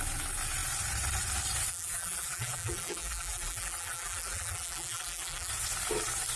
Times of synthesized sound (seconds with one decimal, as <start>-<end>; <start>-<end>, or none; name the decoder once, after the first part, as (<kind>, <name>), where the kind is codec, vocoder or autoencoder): 1.7-5.5 (vocoder, BigVGAN v2)